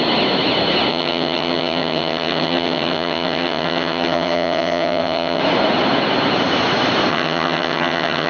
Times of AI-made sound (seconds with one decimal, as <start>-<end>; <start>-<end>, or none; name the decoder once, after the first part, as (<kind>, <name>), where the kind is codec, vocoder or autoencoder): 0.9-5.4 (vocoder, HiFi-GAN); 7.1-8.3

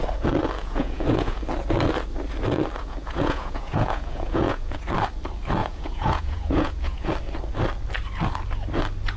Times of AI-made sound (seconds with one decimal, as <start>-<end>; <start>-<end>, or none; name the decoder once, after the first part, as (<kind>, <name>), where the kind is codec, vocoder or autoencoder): 0.6-1.4 (vocoder, Vocos); 2.8-4.8; 5.6-7.1

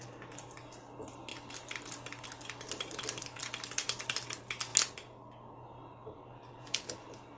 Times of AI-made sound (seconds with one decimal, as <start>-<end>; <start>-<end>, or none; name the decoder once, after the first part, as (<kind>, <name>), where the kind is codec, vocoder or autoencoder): none